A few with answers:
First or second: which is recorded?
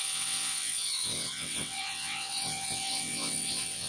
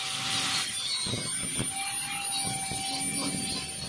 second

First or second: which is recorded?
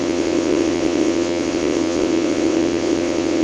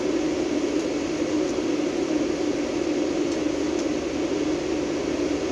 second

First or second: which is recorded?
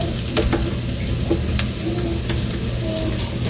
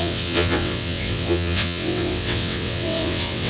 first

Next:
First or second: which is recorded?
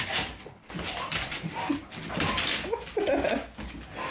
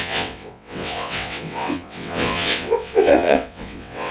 first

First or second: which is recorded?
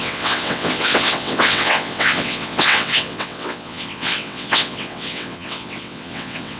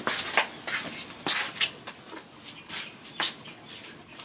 second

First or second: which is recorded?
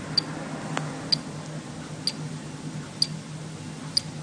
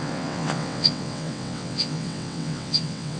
first